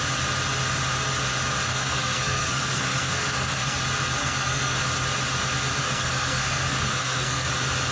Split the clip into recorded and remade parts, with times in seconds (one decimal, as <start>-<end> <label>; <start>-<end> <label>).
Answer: 0.0-1.7 recorded; 1.7-3.8 remade; 3.8-4.2 recorded; 4.2-4.8 remade; 4.8-5.8 recorded; 5.8-7.5 remade; 7.5-7.9 recorded